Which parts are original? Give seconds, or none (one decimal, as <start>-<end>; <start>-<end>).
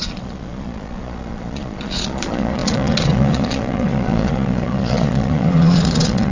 none